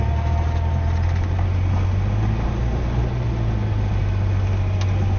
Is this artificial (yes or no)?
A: no